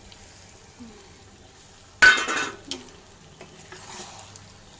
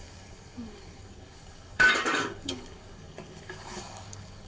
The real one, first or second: first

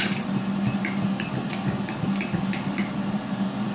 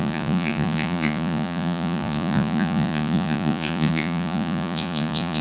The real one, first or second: first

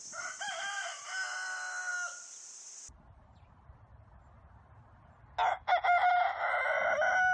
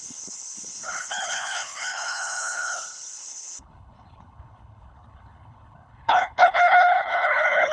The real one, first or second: first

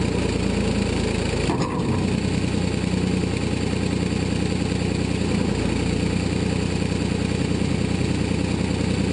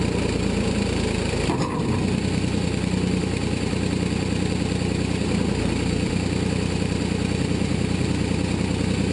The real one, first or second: first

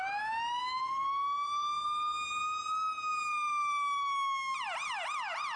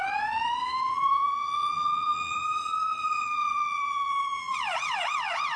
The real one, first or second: first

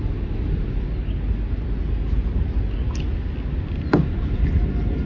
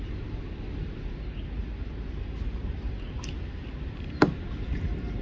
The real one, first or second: first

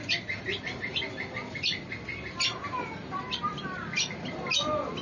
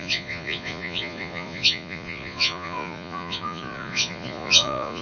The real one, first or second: first